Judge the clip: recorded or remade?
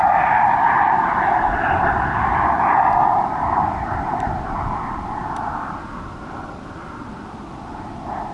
remade